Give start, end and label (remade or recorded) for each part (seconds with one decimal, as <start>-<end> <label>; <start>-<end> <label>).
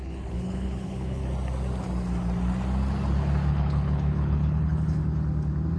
0.0-1.2 remade; 1.2-3.5 recorded; 3.5-5.0 remade; 5.0-5.8 recorded